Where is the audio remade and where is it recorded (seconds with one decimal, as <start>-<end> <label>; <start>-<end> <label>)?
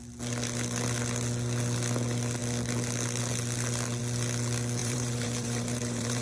0.0-4.8 recorded; 4.8-6.2 remade